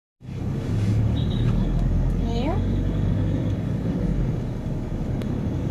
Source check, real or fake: fake